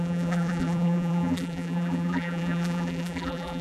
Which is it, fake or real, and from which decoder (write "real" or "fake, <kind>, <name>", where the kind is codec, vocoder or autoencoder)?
fake, vocoder, BigVGAN v2